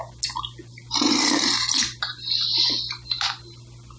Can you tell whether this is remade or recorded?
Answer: recorded